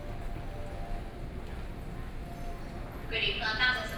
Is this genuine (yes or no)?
yes